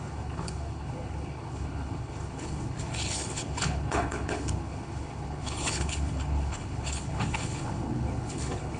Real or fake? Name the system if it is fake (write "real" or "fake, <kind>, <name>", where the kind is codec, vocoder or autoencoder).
fake, codec, HILCodec